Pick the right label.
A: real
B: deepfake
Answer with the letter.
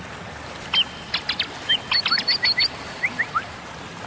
A